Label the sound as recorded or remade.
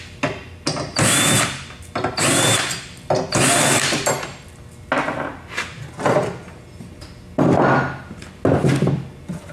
recorded